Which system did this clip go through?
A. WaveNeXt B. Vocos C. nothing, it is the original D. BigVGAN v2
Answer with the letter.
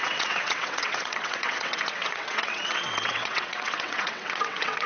A